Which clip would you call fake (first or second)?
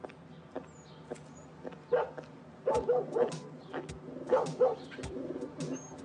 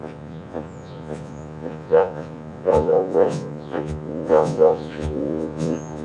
second